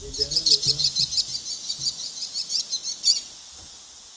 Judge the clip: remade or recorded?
remade